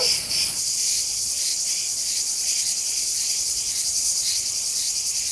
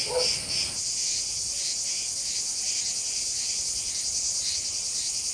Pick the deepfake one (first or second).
first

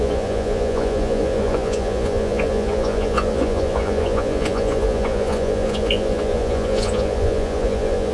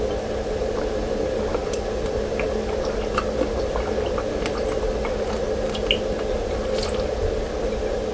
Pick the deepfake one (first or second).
first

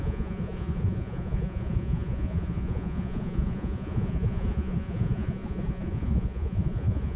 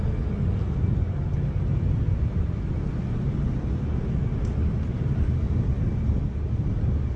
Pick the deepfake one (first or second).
first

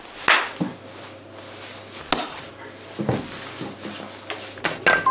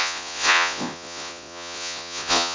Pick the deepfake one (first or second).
second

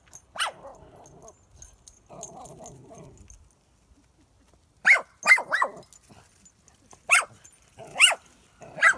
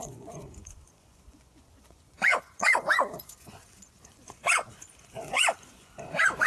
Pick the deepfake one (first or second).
second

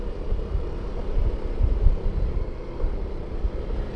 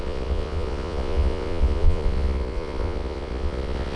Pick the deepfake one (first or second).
second